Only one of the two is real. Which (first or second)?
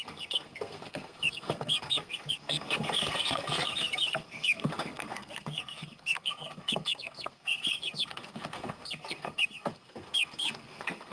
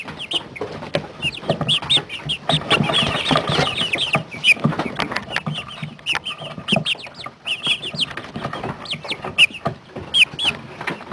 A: second